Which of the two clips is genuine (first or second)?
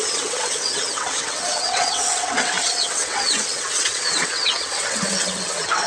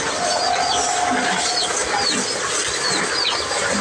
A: second